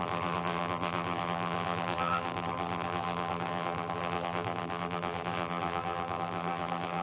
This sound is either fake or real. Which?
fake